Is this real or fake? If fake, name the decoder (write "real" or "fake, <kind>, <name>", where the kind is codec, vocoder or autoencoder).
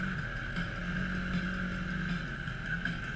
real